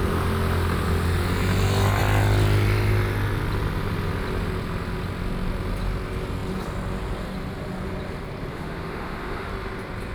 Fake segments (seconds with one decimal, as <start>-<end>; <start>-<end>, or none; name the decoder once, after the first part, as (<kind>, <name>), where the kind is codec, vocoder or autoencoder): 8.5-9.5 (autoencoder, DAC-VAE)